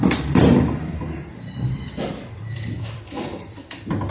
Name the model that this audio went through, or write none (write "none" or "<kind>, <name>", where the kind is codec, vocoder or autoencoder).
vocoder, BigVGAN v2